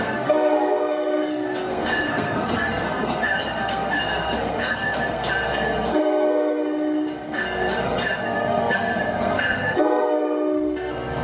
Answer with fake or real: fake